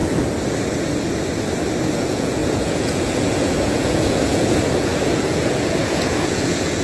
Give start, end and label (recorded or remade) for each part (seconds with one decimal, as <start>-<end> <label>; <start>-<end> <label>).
0.0-1.9 recorded; 1.9-6.8 remade